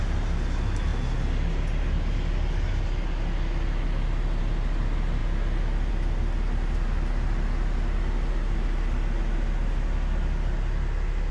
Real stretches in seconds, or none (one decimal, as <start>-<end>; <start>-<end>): 0.0-11.3